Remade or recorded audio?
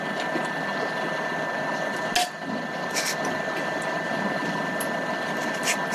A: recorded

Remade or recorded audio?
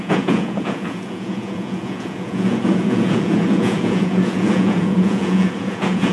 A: remade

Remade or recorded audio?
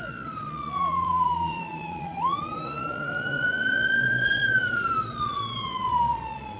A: remade